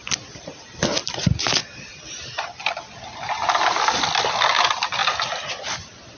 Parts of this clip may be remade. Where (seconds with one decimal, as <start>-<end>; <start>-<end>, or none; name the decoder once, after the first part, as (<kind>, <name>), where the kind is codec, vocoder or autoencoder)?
none